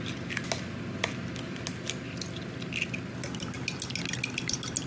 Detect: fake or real real